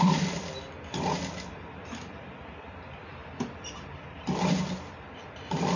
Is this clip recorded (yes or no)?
yes